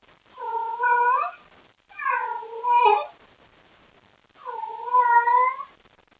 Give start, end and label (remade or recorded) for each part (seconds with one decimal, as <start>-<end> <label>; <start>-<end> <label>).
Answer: 0.0-6.2 recorded